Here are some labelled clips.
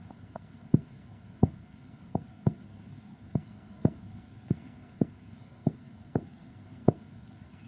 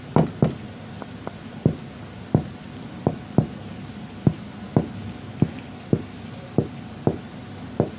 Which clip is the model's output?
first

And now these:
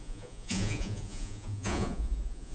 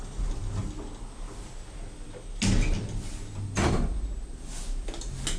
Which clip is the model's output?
first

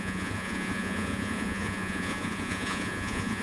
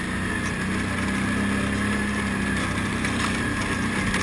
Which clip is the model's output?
first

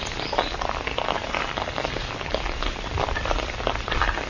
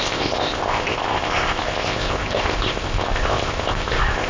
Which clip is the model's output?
second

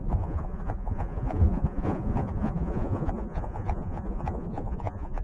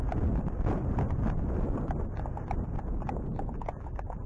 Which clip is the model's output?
first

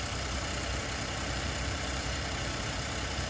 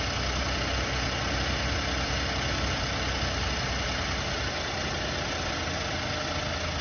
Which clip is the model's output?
first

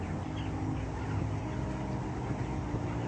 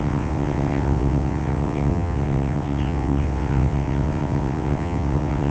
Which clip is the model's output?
second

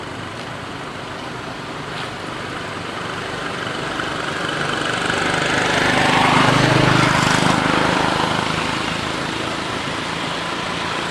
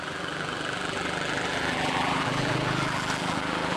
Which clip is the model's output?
second